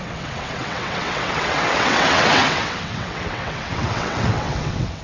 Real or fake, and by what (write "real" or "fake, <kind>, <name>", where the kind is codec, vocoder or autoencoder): fake, vocoder, WaveNeXt